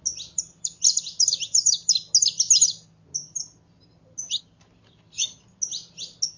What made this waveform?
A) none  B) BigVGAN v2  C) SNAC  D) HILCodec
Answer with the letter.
A